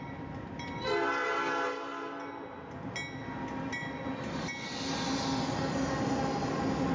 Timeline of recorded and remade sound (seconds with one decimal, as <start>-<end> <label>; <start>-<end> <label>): 0.0-6.9 recorded